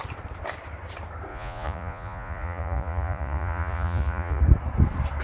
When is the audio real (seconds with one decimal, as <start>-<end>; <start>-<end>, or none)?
0.0-1.3; 4.4-5.2